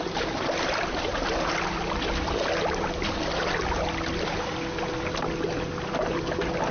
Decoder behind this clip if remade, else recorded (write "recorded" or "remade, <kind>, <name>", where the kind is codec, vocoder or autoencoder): recorded